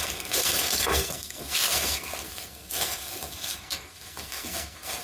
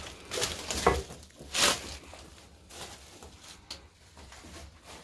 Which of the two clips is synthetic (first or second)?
first